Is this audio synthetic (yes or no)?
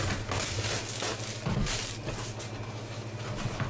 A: no